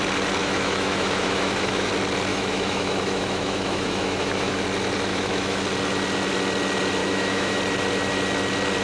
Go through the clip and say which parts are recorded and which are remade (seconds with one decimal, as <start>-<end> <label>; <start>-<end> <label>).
0.0-0.4 recorded; 0.4-1.9 remade; 1.9-2.3 recorded; 2.3-4.6 remade; 4.6-5.1 recorded; 5.1-5.6 remade; 5.6-7.0 recorded; 7.0-7.6 remade; 7.6-8.8 recorded